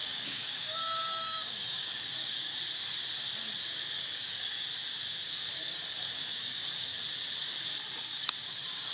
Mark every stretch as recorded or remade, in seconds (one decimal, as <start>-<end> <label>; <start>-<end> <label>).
0.0-2.5 remade; 2.5-3.6 recorded; 3.6-4.7 remade; 4.7-5.3 recorded; 5.3-6.9 remade; 6.9-8.0 recorded; 8.0-8.9 remade